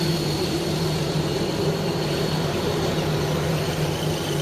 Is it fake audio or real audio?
fake